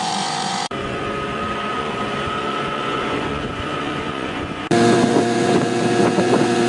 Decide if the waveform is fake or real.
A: fake